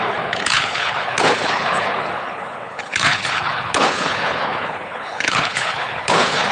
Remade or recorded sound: remade